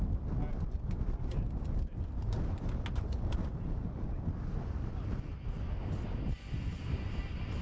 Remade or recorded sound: recorded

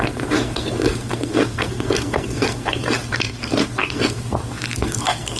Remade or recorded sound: remade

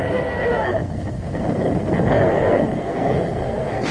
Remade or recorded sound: remade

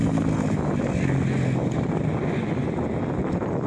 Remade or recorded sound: recorded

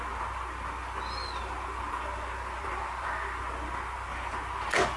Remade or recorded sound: recorded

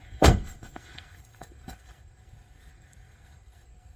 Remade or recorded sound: remade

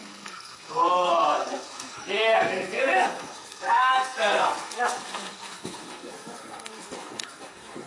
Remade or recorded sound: remade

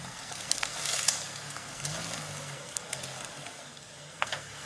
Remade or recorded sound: remade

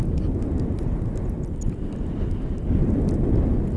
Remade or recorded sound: recorded